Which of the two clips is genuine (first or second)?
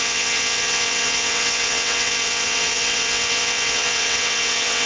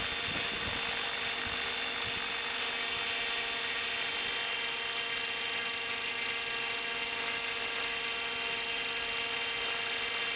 second